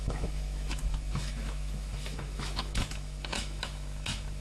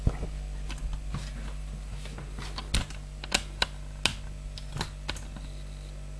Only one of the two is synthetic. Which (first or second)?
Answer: first